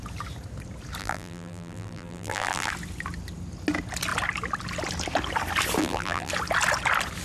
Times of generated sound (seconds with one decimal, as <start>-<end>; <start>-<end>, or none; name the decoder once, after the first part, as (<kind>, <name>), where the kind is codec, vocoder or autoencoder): 1.0-2.7 (vocoder, BigVGAN v2); 5.8-6.3